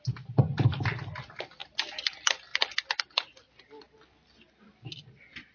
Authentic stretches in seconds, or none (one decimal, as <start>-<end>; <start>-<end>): 0.0-5.5